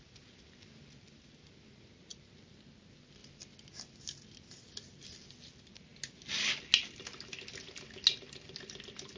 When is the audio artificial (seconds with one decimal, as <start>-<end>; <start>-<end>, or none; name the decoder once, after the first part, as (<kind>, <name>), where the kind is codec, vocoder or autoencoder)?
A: none